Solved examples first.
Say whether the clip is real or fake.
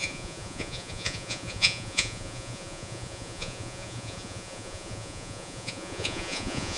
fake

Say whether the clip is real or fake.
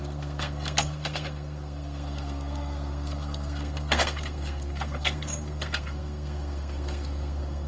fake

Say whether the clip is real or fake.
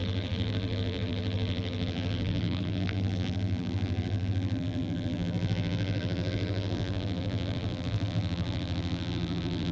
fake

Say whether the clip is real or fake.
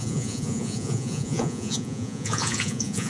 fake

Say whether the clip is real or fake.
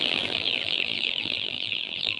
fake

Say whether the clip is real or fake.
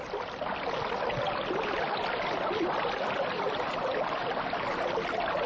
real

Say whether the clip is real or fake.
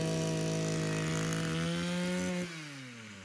real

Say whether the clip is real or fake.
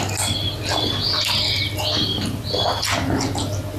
real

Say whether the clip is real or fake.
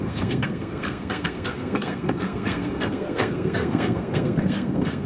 fake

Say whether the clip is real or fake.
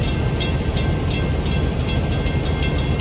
real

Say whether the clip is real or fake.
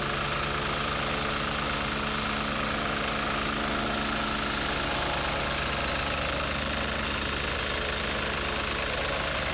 real